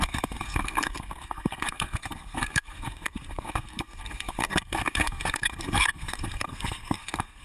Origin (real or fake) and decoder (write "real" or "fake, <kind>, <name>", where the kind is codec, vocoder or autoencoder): fake, codec, SNAC